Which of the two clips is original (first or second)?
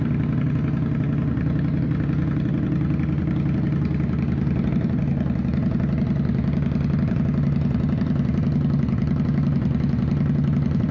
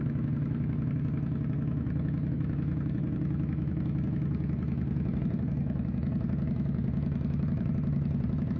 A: first